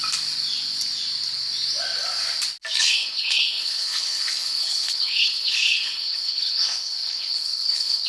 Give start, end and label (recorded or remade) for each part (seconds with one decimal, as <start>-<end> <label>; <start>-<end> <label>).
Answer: 0.0-2.8 recorded; 2.8-8.1 remade